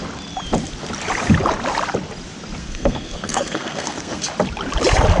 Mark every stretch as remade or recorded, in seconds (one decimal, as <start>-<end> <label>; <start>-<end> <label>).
0.0-2.6 recorded; 2.6-4.2 remade; 4.2-5.2 recorded